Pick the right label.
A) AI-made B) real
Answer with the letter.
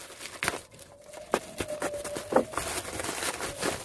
B